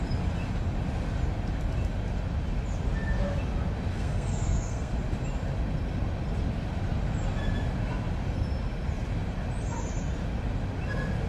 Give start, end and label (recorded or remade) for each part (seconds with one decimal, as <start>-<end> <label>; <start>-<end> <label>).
0.0-3.9 recorded; 3.9-4.9 remade; 4.9-11.3 recorded